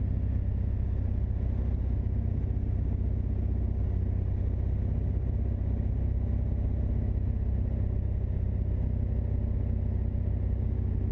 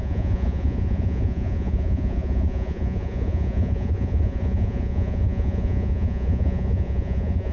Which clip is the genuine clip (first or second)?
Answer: first